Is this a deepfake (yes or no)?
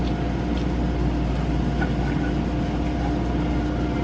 no